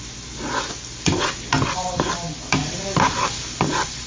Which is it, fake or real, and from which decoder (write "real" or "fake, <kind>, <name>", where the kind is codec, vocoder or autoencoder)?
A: real